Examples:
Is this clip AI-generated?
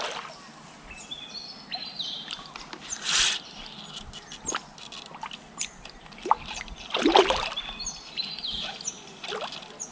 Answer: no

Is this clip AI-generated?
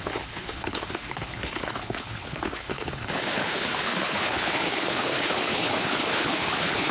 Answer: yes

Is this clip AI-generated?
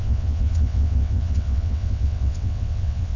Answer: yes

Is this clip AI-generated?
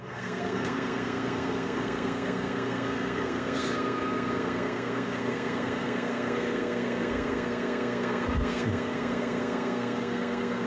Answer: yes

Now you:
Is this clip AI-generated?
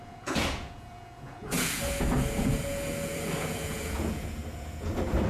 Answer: yes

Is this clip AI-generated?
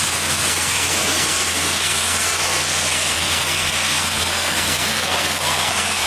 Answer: yes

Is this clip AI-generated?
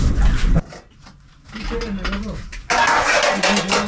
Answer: no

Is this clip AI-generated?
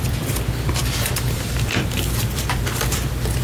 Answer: yes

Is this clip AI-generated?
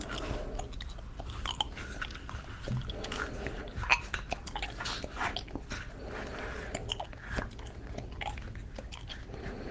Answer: no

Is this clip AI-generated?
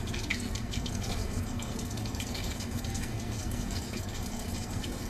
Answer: yes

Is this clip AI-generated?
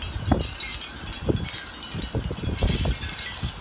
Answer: no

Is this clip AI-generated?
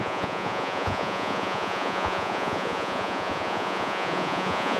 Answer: yes